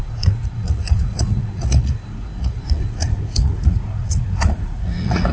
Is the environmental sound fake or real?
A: fake